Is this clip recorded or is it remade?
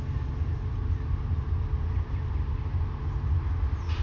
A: recorded